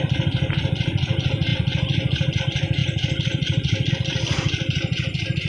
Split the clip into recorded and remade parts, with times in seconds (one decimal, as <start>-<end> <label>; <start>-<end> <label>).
0.0-5.5 recorded